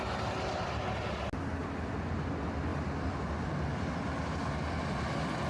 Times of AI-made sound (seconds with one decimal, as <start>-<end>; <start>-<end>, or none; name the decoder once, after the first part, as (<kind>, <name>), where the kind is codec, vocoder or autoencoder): 1.6-2.1 (vocoder, BigVGAN v2); 2.7-3.5